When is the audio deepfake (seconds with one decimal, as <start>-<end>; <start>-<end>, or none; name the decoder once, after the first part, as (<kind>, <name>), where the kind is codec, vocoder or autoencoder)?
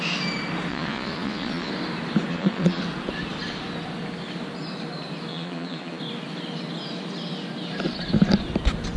0.7-1.7 (vocoder, Vocos); 2.3-2.8; 5.3-6.0